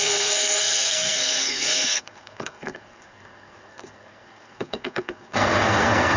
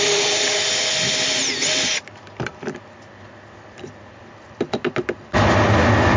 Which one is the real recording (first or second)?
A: second